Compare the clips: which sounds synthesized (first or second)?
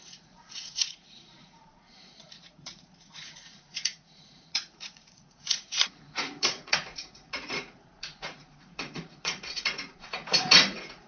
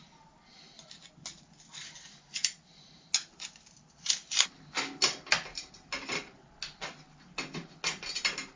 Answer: first